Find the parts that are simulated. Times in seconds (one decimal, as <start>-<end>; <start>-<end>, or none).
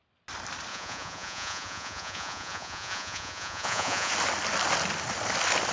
0.7-4.1